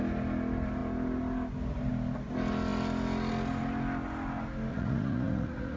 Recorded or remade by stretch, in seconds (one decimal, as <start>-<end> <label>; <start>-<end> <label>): 0.0-4.7 recorded; 4.7-5.8 remade